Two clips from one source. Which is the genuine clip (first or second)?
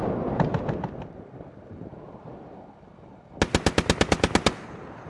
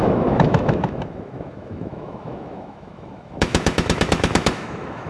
first